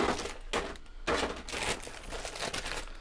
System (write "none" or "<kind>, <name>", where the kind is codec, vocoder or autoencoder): none